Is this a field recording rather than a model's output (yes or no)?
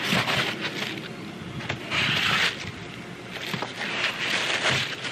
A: yes